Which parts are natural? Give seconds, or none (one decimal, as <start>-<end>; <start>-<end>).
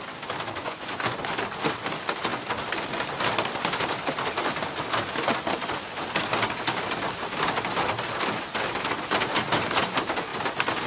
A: 0.0-0.6; 1.2-10.9